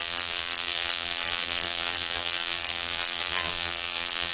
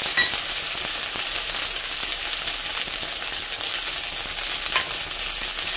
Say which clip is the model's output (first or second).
first